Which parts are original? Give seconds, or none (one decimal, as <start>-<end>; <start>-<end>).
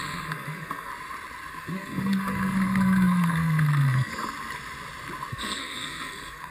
0.9-1.5; 4.1-5.3